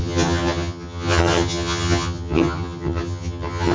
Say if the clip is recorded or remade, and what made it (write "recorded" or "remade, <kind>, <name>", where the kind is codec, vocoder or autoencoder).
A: remade, vocoder, HiFi-GAN